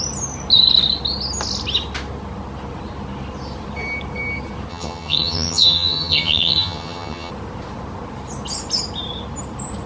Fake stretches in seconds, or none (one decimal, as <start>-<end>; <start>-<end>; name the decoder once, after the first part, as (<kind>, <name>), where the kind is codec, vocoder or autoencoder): 4.7-7.3 (vocoder, HiFi-GAN)